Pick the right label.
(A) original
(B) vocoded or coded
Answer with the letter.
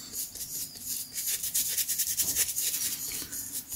A